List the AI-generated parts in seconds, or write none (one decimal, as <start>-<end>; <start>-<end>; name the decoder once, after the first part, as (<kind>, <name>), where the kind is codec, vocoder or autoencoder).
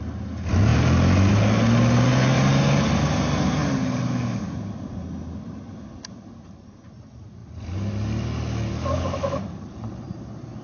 none